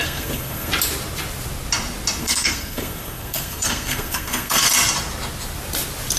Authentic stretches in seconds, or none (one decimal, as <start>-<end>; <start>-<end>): 0.7-2.2; 4.7-6.2